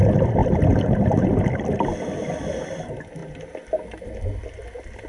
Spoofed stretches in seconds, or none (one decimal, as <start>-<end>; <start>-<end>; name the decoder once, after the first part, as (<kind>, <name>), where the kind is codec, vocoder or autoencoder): 0.4-1.6 (vocoder, BigVGAN v2)